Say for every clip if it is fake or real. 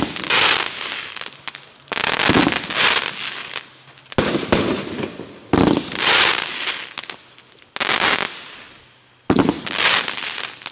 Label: real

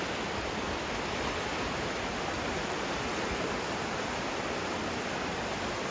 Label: real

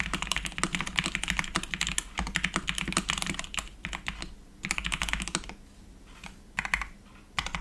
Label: real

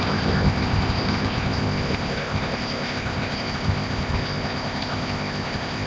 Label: fake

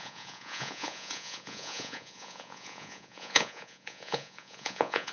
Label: fake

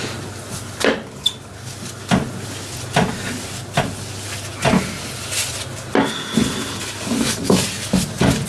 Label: real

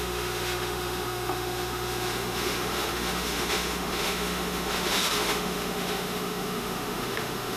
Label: fake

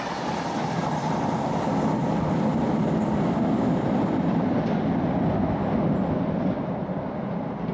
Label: real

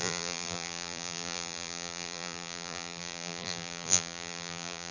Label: fake